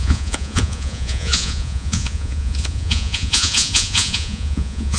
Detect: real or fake fake